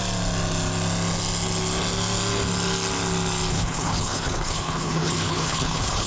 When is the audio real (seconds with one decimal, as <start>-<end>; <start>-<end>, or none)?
0.0-3.5